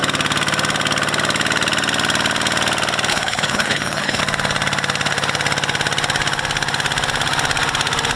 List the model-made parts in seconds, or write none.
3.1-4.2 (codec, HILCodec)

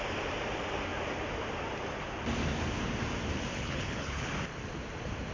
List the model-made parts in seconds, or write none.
3.5-4.3 (codec, HILCodec)

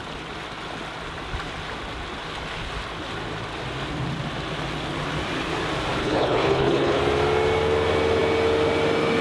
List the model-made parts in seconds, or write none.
6.0-7.0 (codec, HILCodec)

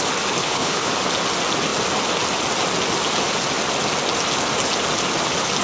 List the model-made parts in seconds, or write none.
0.4-0.9 (codec, HILCodec)